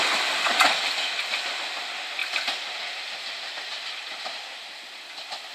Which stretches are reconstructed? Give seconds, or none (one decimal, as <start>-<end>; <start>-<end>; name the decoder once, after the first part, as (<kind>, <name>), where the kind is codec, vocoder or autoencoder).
2.2-2.8 (vocoder, BigVGAN v2)